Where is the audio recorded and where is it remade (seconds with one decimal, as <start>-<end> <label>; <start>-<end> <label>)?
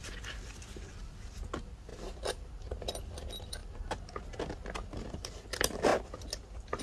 0.0-6.8 recorded